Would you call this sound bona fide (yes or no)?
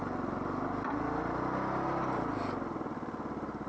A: yes